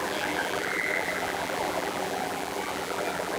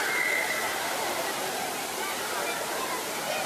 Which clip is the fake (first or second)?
first